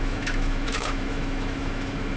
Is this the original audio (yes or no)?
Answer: no